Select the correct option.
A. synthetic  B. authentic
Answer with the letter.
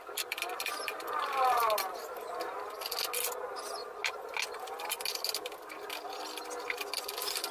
B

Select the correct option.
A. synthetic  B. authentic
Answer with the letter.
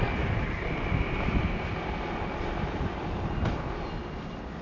B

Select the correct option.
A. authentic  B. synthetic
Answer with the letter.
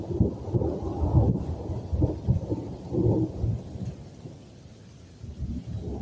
A